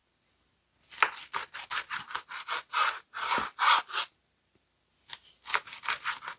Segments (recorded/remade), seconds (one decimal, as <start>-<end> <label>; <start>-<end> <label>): 0.0-6.4 recorded